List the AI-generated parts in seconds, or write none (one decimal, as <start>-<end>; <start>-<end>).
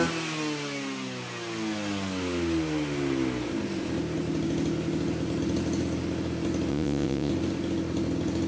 6.7-7.3